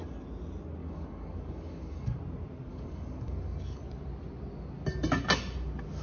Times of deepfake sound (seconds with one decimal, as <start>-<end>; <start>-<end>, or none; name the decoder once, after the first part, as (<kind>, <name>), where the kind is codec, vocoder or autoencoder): 0.8-2.2 (codec, DAC); 2.7-3.8